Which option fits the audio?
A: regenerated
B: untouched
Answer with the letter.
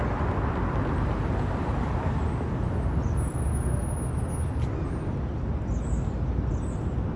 B